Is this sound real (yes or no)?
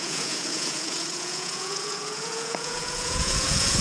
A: no